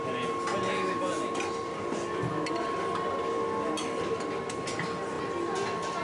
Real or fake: real